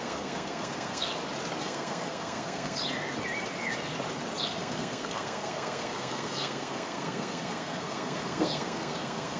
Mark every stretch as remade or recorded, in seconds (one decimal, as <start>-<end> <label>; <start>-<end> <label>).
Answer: 0.0-1.1 remade; 1.1-1.6 recorded; 1.6-2.8 remade; 2.8-4.4 recorded; 4.4-9.4 remade